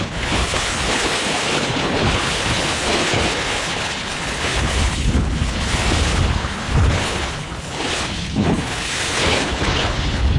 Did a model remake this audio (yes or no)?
yes